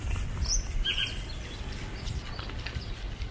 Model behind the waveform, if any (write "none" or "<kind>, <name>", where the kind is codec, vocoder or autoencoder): none